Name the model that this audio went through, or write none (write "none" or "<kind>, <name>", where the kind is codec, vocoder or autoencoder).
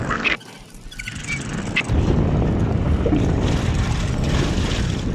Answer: vocoder, BigVGAN v2